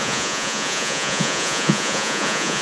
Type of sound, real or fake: fake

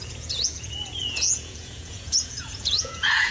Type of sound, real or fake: fake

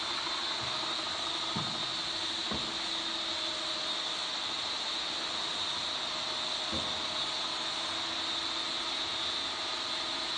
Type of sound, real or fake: real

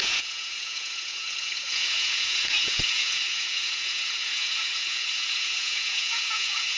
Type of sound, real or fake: fake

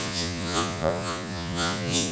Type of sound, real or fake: fake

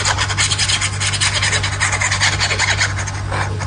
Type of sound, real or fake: real